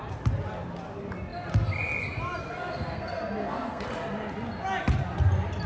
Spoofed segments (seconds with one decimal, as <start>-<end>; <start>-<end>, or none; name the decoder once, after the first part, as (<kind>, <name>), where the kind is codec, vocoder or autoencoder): 2.4-3.8 (codec, SNAC)